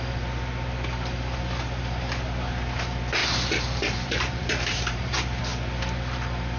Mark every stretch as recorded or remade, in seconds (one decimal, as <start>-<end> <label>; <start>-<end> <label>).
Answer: 0.0-3.2 recorded; 3.2-5.4 remade; 5.4-6.6 recorded